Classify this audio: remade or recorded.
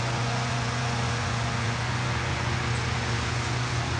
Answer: remade